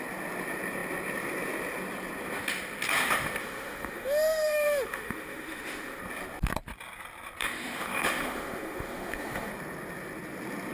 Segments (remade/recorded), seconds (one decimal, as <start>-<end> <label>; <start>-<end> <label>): 0.0-3.4 recorded; 3.4-6.0 remade; 6.0-7.4 recorded; 7.4-9.5 remade; 9.5-10.7 recorded